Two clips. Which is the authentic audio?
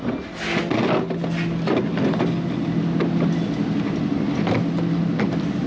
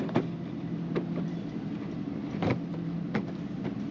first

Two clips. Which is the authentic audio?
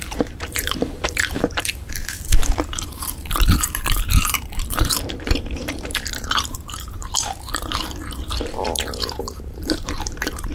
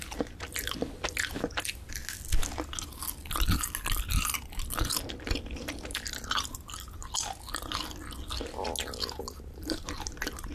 second